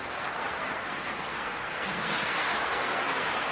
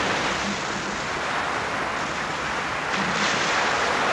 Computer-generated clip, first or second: first